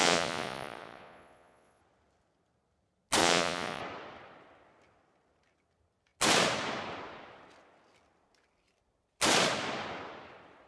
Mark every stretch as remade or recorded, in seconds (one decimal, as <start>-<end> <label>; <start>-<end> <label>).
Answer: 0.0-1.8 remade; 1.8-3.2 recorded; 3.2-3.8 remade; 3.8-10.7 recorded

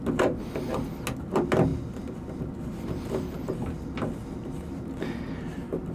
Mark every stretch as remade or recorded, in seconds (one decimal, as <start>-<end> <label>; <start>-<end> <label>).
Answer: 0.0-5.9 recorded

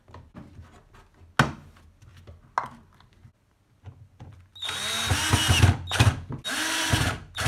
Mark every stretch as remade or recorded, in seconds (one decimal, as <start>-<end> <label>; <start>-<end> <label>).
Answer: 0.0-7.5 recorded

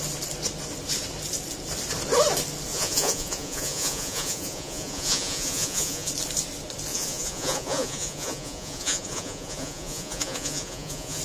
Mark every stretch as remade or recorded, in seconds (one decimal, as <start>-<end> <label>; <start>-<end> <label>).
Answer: 0.0-2.7 recorded; 2.7-6.1 remade; 6.1-6.9 recorded; 6.9-11.2 remade

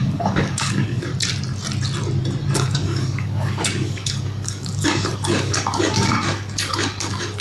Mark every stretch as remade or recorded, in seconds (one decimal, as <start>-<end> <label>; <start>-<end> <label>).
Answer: 0.0-1.1 remade; 1.1-2.5 recorded; 2.5-7.4 remade

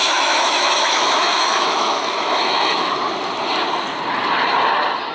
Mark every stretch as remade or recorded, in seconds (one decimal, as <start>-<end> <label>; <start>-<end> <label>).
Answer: 0.0-2.9 remade; 2.9-5.1 recorded

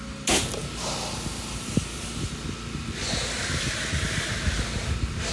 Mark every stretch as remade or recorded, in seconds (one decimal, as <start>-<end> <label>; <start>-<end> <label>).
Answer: 0.0-5.3 recorded